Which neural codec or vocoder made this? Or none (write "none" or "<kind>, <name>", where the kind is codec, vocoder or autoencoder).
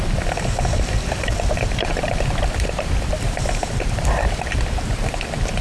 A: vocoder, BigVGAN v2